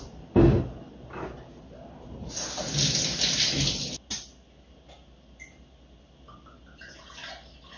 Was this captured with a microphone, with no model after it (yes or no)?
yes